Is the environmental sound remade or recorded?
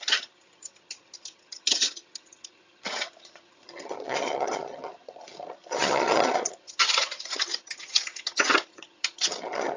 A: remade